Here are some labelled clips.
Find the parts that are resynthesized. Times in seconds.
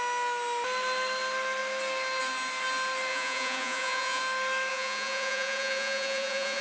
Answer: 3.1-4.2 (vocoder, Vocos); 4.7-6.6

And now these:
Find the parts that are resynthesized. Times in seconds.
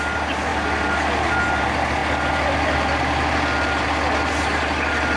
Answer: none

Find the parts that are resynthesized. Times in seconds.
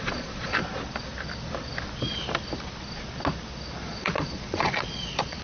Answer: 0.0-0.6 (vocoder, Vocos); 3.8-5.4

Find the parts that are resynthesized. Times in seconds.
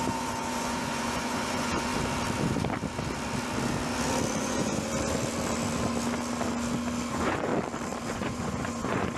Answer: 0.0-1.9 (vocoder, Vocos); 4.4-4.9; 7.1-7.5; 8.1-9.2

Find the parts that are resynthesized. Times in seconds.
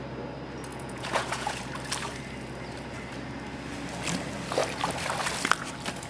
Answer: 0.7-1.7 (vocoder, Vocos)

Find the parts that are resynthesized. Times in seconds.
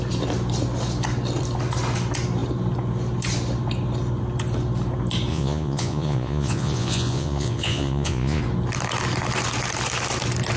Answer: 5.3-8.4 (vocoder, Vocos)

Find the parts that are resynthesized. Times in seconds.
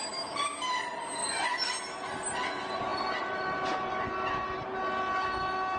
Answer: 1.2-1.7 (vocoder, Vocos)